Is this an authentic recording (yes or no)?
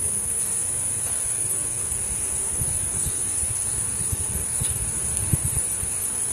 no